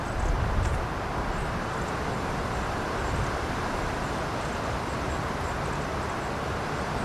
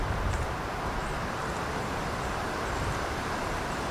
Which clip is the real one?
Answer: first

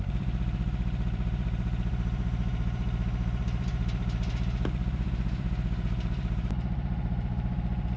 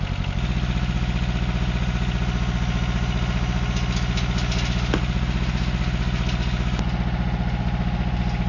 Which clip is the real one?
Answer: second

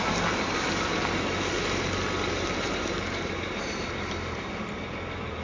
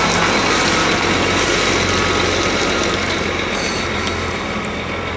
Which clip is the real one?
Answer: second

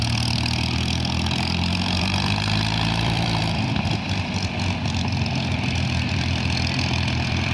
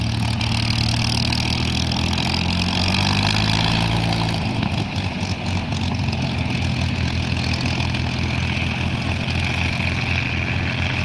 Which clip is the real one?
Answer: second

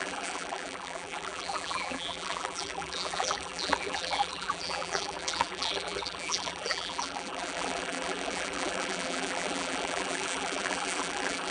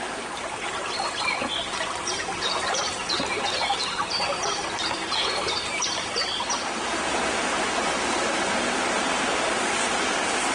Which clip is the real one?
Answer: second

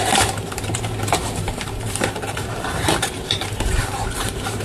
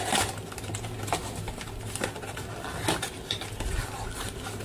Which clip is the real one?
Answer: second